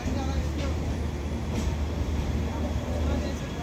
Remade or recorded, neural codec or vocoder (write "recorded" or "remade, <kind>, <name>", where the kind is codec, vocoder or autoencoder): recorded